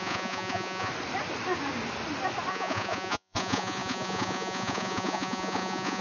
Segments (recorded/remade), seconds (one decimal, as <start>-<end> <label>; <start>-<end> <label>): 0.0-0.9 remade; 0.9-2.5 recorded; 2.5-6.0 remade